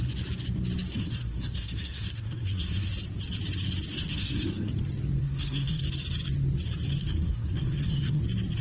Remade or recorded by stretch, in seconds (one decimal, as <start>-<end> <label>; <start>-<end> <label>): 0.0-0.9 recorded; 0.9-2.9 remade; 2.9-3.9 recorded; 3.9-4.7 remade; 4.7-5.2 recorded; 5.2-5.8 remade; 5.8-7.0 recorded; 7.0-8.2 remade; 8.2-8.6 recorded